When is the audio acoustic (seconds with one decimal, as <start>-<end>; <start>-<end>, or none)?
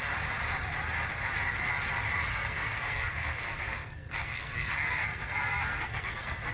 0.0-2.3